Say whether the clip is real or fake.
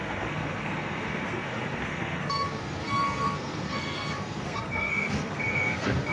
fake